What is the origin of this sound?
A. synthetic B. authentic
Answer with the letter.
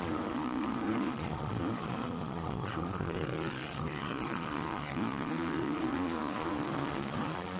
A